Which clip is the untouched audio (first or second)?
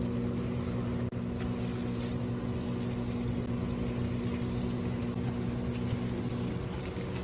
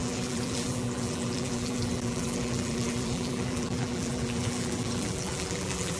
first